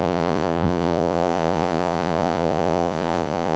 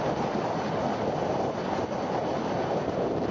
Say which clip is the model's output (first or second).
first